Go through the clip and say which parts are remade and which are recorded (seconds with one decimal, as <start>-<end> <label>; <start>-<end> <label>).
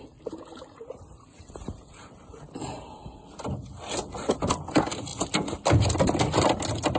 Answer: 0.0-7.0 recorded